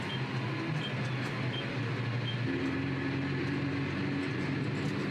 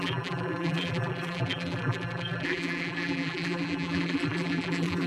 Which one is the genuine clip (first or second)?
first